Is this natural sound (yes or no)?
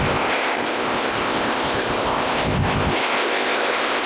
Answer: no